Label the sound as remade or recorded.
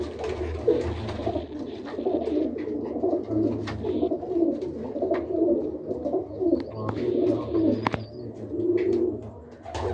recorded